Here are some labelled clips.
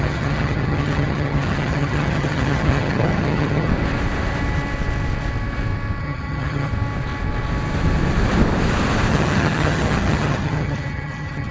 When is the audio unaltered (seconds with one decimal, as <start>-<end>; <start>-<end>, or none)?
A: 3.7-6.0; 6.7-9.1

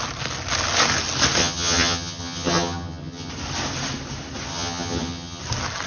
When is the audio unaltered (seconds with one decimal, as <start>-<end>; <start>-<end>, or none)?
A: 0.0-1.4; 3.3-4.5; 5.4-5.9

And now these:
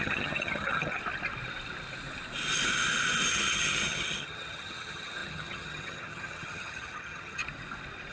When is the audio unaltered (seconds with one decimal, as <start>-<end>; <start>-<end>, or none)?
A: 1.0-3.3; 7.4-8.1

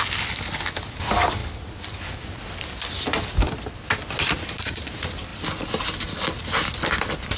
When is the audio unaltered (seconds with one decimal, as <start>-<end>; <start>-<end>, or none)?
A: 0.0-7.4

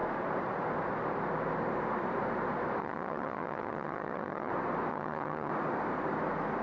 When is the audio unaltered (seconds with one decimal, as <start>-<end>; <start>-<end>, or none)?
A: 0.0-2.8; 4.5-4.9; 5.5-6.6